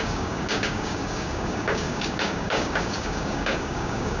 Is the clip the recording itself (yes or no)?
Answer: no